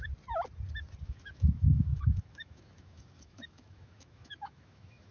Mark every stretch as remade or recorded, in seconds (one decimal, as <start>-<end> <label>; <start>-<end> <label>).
0.0-1.0 recorded; 1.0-5.1 remade